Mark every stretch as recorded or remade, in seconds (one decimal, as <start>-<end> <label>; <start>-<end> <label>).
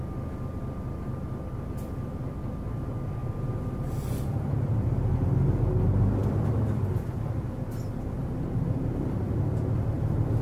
0.0-10.4 recorded